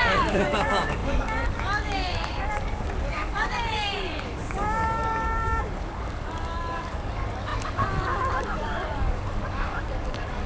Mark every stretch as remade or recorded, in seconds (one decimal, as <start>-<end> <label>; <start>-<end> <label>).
0.0-10.5 remade